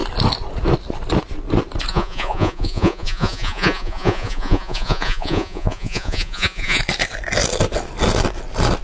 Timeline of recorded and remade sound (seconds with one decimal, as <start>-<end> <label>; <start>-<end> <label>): 0.0-1.9 recorded; 1.9-6.8 remade; 6.8-8.8 recorded